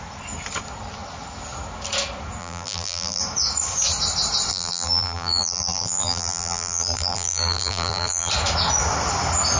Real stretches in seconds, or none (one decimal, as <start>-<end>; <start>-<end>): 0.0-2.4; 3.2-4.5; 8.3-9.6